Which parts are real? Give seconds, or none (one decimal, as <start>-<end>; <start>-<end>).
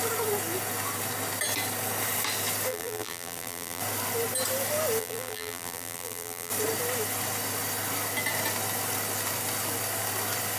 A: 0.0-2.7; 3.8-5.0; 6.5-10.6